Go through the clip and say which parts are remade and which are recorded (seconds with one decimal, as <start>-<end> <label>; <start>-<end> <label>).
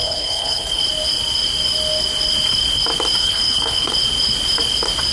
0.0-0.8 remade; 0.8-3.2 recorded; 3.2-3.9 remade; 3.9-5.1 recorded